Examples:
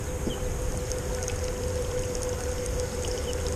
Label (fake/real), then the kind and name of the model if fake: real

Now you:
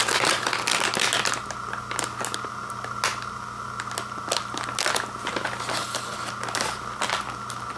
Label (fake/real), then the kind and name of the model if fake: real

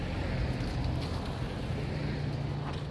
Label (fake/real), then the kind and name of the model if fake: real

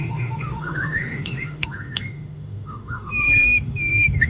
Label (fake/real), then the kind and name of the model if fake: fake, autoencoder, DAC-VAE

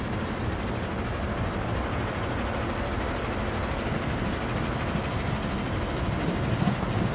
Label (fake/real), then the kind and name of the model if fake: real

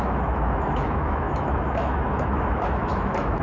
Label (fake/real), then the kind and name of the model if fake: fake, autoencoder, DAC-VAE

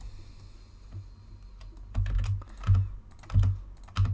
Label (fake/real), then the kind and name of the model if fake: real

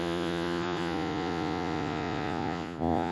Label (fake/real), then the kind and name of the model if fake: fake, vocoder, Vocos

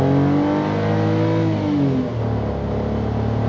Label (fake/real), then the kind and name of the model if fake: real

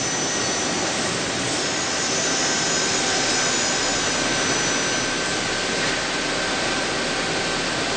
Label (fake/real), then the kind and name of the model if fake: real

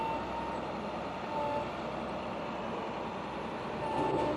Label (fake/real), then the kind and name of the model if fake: real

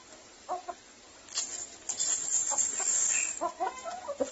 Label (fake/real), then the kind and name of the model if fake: real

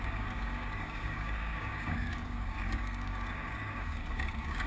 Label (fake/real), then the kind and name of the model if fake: fake, codec, DAC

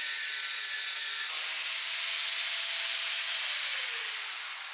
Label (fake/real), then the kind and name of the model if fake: real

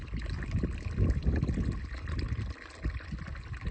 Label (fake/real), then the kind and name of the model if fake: real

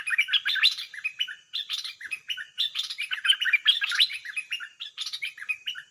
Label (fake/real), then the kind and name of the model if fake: fake, vocoder, BigVGAN v2